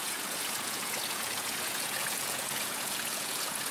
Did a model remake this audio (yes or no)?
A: yes